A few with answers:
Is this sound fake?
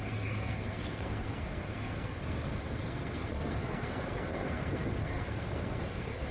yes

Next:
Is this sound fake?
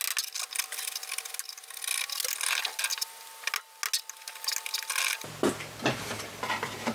no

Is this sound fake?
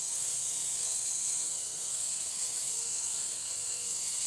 yes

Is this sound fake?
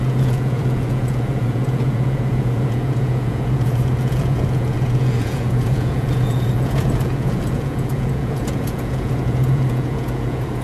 yes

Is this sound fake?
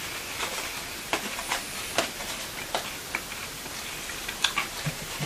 no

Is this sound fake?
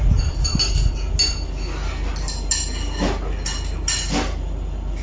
no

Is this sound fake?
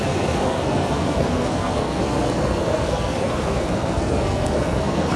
yes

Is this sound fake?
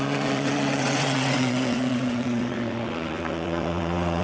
yes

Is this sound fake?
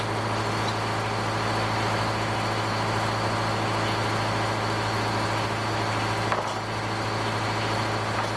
no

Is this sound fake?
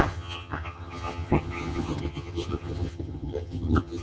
yes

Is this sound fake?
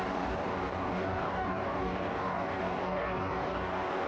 yes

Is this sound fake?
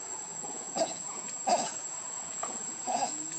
yes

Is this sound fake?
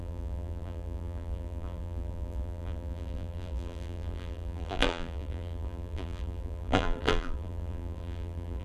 yes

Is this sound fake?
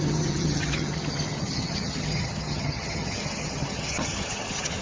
yes